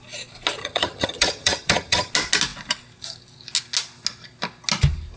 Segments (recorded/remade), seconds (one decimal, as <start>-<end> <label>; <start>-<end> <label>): 0.0-0.6 recorded; 0.6-2.1 remade; 2.1-5.2 recorded